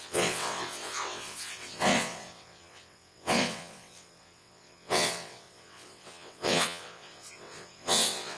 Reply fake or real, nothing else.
fake